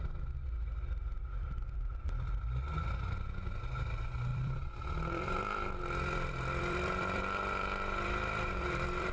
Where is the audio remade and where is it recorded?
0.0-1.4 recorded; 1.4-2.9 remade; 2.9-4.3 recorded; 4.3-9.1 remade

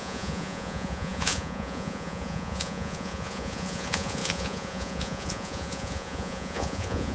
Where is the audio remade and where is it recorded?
0.0-7.1 remade

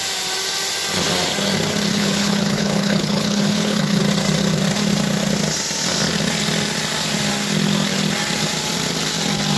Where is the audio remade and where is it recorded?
0.0-1.9 recorded; 1.9-4.0 remade; 4.0-9.6 recorded